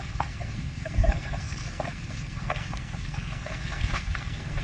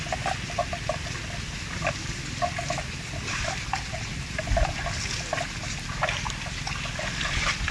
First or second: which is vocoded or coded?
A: first